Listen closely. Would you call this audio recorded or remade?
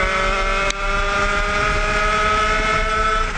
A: recorded